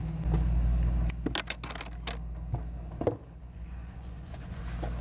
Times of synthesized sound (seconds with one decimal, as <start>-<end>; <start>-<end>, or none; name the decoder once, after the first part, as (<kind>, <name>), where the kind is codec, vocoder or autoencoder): 3.4-4.6 (vocoder, Vocos)